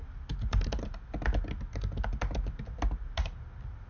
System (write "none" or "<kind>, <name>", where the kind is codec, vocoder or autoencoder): none